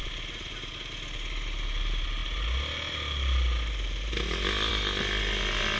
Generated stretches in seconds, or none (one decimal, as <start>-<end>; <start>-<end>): none